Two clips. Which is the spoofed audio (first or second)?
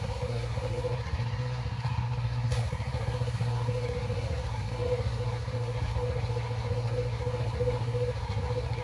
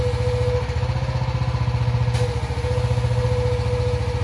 first